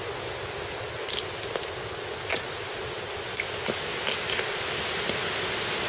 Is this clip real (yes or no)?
yes